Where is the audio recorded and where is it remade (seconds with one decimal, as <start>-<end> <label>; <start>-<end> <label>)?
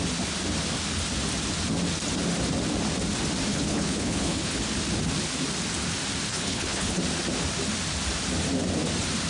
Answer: 0.0-3.5 recorded; 3.5-4.6 remade; 4.6-6.3 recorded; 6.3-7.0 remade; 7.0-9.3 recorded